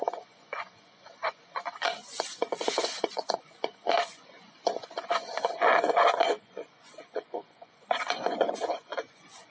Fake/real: fake